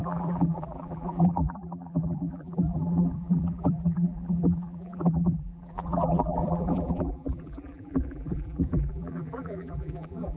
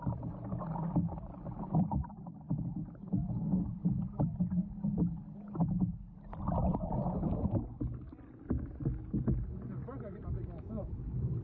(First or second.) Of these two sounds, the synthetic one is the first